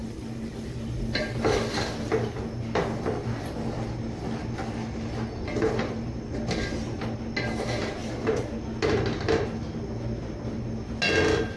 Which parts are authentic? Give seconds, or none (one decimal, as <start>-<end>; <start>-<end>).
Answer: 0.0-11.6